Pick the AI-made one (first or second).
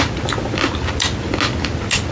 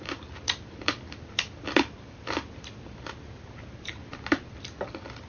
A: second